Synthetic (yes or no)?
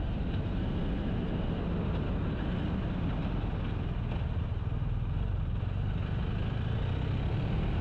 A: no